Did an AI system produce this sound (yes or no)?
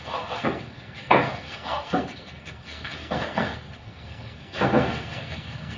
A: yes